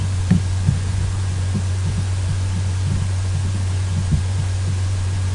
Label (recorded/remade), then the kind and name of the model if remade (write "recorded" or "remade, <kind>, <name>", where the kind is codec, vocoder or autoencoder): remade, vocoder, Vocos